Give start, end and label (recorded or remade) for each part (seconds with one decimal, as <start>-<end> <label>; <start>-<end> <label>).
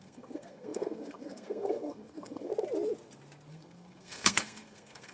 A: 0.0-2.5 remade; 2.5-3.5 recorded; 3.5-5.1 remade